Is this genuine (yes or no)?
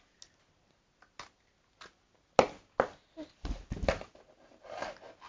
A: yes